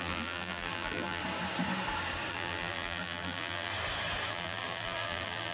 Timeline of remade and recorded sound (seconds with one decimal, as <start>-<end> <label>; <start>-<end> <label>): 0.0-1.2 remade; 1.2-2.3 recorded; 2.3-3.7 remade; 3.7-4.3 recorded; 4.3-5.5 remade